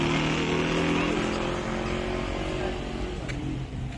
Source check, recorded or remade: recorded